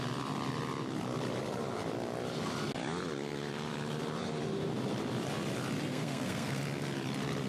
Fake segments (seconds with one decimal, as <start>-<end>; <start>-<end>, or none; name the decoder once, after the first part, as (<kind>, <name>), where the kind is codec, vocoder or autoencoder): 5.9-6.6 (codec, SNAC)